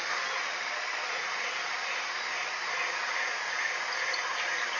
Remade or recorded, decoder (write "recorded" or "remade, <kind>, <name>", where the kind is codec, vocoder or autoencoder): recorded